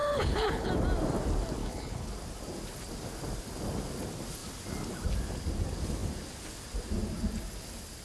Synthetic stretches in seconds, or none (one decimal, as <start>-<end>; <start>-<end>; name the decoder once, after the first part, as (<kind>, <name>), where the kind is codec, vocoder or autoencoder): 0.0-0.7 (codec, HILCodec); 1.6-2.1